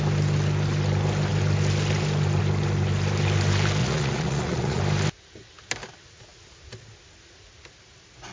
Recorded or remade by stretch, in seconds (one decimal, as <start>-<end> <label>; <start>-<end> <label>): 0.0-3.8 recorded; 3.8-4.8 remade; 4.8-8.3 recorded